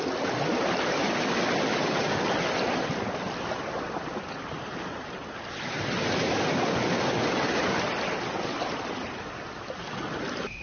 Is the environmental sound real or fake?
real